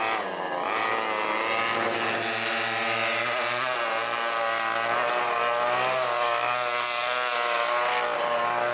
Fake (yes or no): no